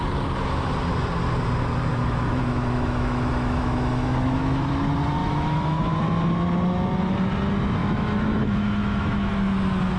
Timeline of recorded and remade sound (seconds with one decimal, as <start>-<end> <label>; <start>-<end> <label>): 0.0-1.9 recorded; 1.9-4.7 remade; 4.7-5.2 recorded; 5.2-5.8 remade; 5.8-7.8 recorded; 7.8-9.3 remade; 9.3-10.0 recorded

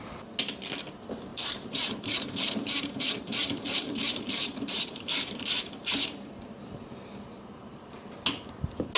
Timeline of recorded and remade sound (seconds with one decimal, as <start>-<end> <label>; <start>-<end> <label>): 0.0-1.3 recorded; 1.3-6.3 remade; 6.3-9.0 recorded